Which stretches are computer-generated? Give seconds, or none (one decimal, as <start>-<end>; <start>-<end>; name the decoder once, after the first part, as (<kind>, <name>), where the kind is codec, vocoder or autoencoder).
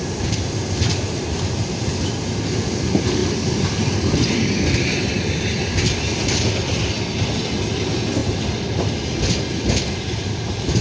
3.2-3.9 (vocoder, BigVGAN v2); 8.2-9.1